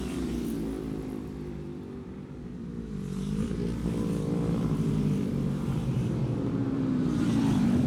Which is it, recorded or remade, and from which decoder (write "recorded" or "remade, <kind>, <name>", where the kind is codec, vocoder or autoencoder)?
remade, vocoder, BigVGAN v2